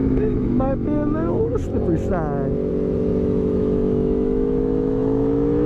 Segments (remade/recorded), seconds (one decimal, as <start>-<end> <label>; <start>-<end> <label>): 0.0-1.6 remade; 1.6-3.1 recorded; 3.1-5.7 remade